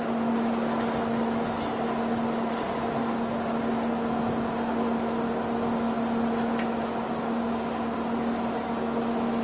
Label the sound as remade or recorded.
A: recorded